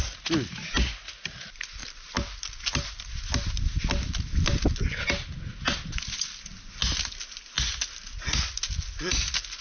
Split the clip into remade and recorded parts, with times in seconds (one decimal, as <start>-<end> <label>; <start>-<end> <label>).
0.0-9.6 recorded